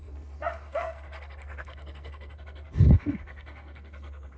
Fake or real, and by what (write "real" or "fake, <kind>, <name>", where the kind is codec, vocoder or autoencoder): fake, codec, SNAC